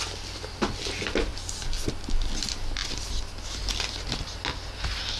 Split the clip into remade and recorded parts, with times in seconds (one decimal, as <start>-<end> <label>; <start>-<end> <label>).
0.0-5.2 recorded